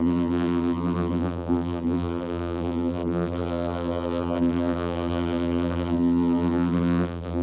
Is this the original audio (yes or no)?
no